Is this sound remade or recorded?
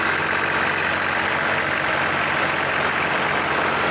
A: recorded